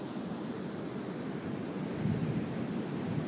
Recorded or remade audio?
recorded